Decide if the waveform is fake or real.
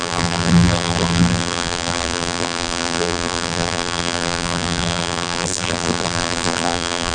fake